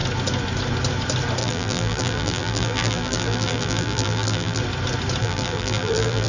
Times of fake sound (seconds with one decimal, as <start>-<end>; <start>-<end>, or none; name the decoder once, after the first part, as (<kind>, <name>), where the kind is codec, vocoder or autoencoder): 1.4-4.6 (vocoder, BigVGAN v2); 5.2-6.3